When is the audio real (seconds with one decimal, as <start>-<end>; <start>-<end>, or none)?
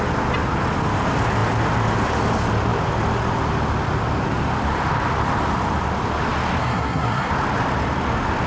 0.0-6.6; 7.3-8.5